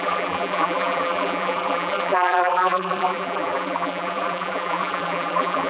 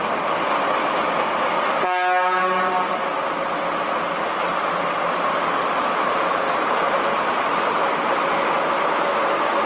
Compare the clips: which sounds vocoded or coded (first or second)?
first